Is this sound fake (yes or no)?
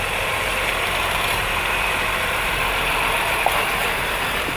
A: yes